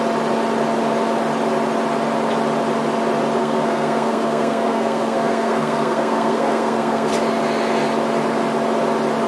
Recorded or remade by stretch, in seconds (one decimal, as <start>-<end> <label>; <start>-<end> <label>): 0.0-3.4 recorded; 3.4-7.1 remade; 7.1-9.3 recorded